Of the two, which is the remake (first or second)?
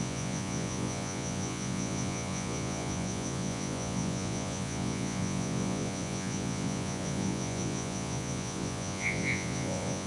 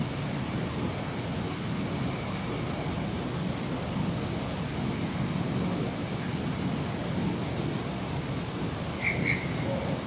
first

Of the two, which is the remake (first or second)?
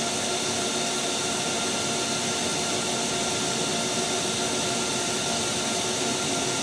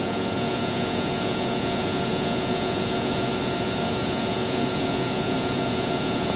second